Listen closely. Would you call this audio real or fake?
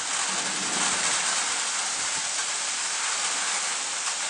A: real